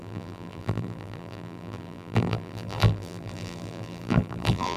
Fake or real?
fake